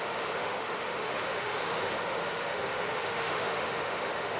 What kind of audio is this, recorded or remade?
remade